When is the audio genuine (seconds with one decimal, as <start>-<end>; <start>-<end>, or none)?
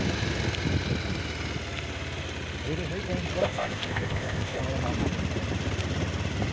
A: 0.0-3.4; 4.6-6.5